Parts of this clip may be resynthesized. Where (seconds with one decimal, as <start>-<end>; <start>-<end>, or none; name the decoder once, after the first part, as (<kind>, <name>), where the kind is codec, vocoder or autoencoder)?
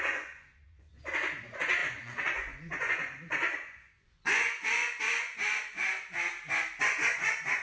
0.0-5.8 (vocoder, Vocos); 6.8-7.6